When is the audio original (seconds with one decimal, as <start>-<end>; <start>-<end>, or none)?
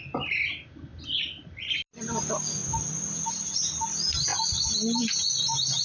0.0-5.8